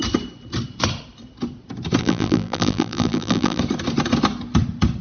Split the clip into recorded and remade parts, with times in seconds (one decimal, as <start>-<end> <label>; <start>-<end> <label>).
0.0-2.0 recorded; 2.0-3.6 remade; 3.6-5.0 recorded